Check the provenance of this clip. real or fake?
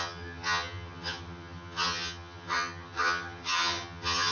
fake